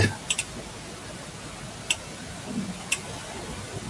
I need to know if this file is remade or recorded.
recorded